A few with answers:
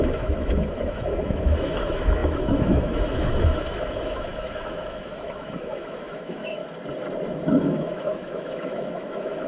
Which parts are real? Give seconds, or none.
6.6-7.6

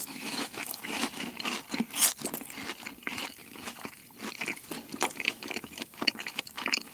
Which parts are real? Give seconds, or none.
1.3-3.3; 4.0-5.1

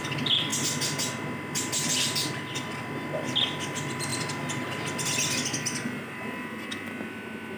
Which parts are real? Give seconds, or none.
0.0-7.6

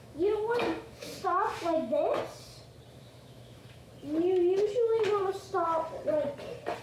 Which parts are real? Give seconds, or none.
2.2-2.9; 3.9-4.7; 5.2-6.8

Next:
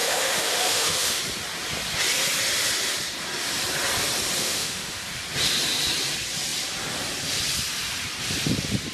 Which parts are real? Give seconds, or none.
1.2-4.4; 5.0-8.9

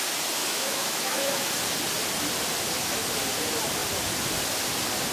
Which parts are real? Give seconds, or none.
0.0-0.4; 1.5-5.1